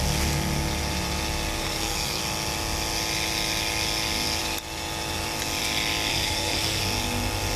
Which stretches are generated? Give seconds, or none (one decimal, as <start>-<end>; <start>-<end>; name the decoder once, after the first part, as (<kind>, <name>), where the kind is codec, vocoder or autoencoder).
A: 1.6-2.2 (codec, SNAC); 6.1-6.8